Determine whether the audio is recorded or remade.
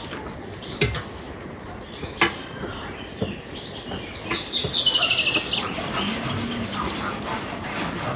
recorded